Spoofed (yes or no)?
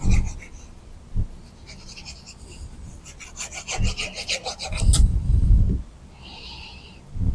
no